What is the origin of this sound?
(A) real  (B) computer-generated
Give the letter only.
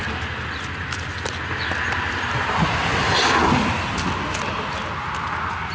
A